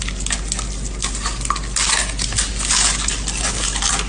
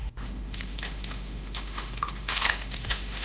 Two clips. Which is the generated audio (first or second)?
second